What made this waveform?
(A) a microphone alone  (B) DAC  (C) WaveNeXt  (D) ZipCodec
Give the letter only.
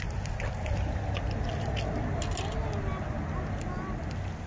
A